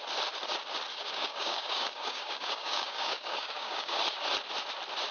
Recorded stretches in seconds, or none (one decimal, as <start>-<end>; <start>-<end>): 0.0-0.9; 4.0-5.1

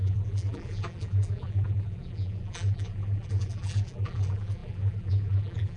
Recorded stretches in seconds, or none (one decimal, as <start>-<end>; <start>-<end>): none